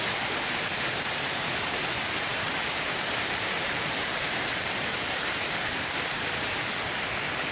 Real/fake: fake